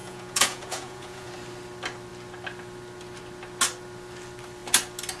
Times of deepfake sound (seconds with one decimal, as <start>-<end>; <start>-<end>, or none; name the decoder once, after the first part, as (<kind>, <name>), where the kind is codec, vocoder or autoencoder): 0.0-1.3 (vocoder, Vocos)